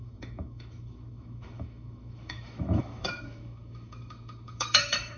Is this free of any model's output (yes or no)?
no